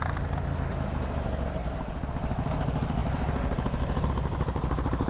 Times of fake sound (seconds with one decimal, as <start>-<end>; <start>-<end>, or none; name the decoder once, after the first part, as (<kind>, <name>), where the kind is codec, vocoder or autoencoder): none